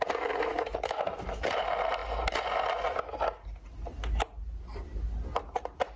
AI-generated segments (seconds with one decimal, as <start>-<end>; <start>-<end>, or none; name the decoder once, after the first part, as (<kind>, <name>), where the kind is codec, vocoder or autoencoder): 0.5-1.0 (autoencoder, DAC-VAE)

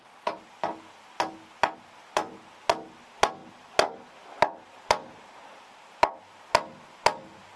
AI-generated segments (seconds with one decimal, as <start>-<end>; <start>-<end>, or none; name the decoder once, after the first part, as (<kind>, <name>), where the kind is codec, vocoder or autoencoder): none

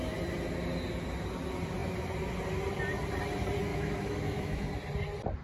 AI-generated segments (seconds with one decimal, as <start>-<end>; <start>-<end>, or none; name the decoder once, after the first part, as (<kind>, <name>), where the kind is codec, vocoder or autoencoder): 3.7-4.7 (autoencoder, DAC-VAE)

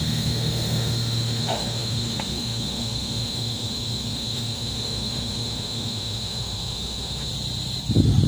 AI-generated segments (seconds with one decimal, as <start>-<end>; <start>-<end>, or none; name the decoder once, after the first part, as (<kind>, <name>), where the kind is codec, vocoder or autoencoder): 0.0-7.3 (autoencoder, DAC-VAE)

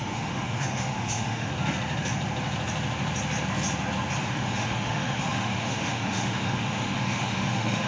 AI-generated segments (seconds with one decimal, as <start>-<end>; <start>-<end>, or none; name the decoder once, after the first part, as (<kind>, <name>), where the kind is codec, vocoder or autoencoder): 0.0-1.5 (autoencoder, DAC-VAE); 4.2-7.9

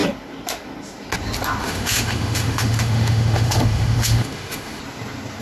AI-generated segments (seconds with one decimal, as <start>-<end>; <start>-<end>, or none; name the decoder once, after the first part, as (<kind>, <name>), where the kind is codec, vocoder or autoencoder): 1.6-4.8 (autoencoder, DAC-VAE)

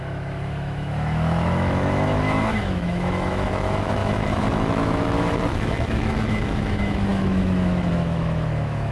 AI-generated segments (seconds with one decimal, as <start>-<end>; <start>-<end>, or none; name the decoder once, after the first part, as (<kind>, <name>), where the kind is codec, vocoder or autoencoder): 0.0-8.9 (autoencoder, DAC-VAE)

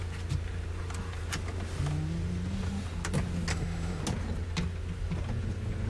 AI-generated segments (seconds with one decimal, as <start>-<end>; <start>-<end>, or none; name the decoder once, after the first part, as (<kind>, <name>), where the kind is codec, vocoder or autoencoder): 3.5-4.0 (autoencoder, DAC-VAE)